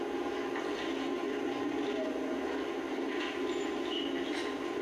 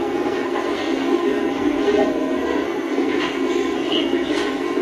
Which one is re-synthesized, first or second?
second